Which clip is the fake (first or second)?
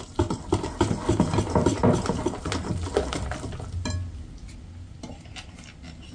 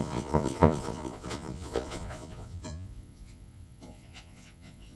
second